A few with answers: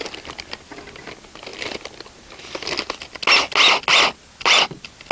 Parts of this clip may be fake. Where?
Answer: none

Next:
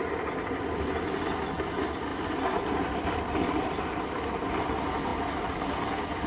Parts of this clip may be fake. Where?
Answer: 2.1-3.8 (vocoder, BigVGAN v2); 5.1-6.3

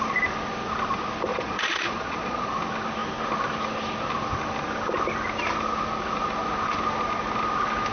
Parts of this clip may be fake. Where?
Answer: 1.3-2.5 (vocoder, Vocos)

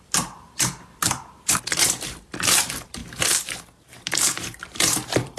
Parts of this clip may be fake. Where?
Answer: 0.0-1.6 (vocoder, BigVGAN v2); 2.6-5.4

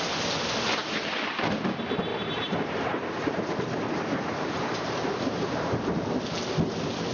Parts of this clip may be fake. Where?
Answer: 2.1-6.2 (vocoder, BigVGAN v2)

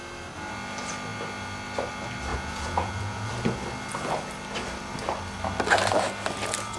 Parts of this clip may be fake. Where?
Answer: 2.3-3.3 (vocoder, Vocos)